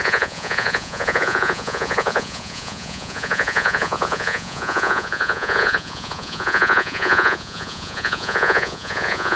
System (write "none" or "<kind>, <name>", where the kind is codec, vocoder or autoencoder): vocoder, Vocos